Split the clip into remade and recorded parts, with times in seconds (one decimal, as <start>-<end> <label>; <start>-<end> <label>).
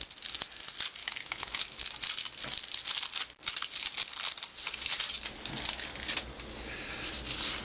0.0-1.0 recorded; 1.0-1.8 remade; 1.8-7.6 recorded